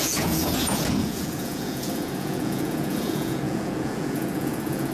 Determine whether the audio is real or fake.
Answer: fake